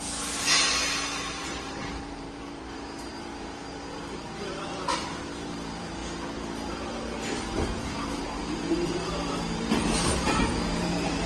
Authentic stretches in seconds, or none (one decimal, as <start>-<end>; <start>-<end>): 0.8-1.3; 6.0-6.7